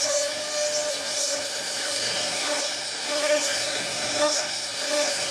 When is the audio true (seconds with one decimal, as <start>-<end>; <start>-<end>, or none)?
0.4-0.9